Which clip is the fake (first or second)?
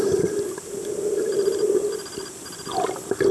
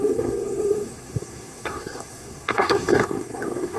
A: second